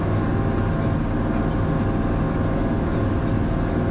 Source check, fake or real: real